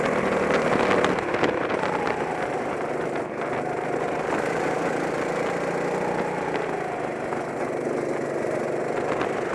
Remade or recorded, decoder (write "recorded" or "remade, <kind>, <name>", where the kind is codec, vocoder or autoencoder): recorded